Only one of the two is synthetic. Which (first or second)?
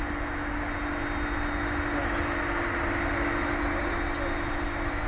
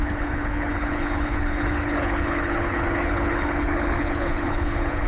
second